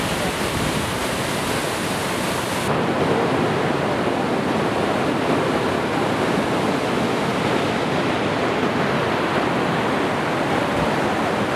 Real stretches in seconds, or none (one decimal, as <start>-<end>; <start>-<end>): 0.0-11.6